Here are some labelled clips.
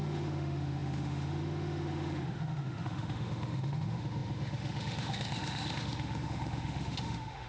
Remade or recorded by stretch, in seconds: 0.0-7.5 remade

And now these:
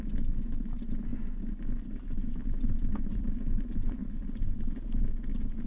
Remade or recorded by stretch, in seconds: 0.0-5.7 recorded

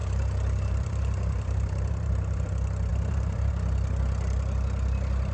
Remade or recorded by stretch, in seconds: 0.0-2.4 remade; 2.4-2.9 recorded; 2.9-3.5 remade; 3.5-5.3 recorded

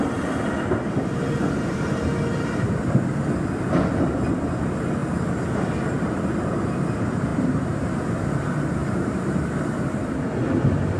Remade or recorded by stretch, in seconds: 0.0-7.3 recorded; 7.3-8.1 remade; 8.1-8.8 recorded; 8.8-9.4 remade; 9.4-11.0 recorded

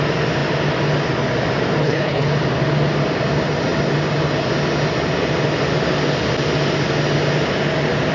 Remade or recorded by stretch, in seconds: 0.0-1.8 recorded; 1.8-2.3 remade; 2.3-8.1 recorded

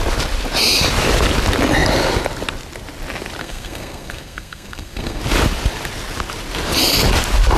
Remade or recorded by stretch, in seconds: 0.0-3.4 recorded; 3.4-5.2 remade; 5.2-7.6 recorded

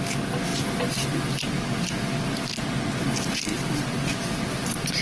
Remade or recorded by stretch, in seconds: 0.0-0.5 recorded; 0.5-2.5 remade; 2.5-3.5 recorded; 3.5-5.0 remade